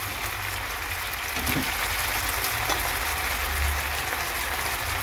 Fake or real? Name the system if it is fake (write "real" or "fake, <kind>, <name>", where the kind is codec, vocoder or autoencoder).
real